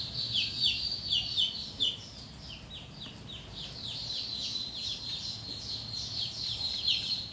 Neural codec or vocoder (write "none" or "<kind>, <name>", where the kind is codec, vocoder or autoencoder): none